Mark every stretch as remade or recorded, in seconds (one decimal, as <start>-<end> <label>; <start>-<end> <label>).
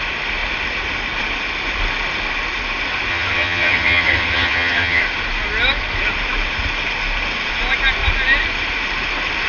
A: 0.0-3.1 recorded; 3.1-5.0 remade; 5.0-9.5 recorded